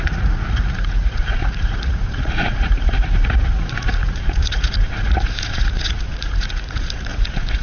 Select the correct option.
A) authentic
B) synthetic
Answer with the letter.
B